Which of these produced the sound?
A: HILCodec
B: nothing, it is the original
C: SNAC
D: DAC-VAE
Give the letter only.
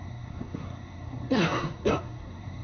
C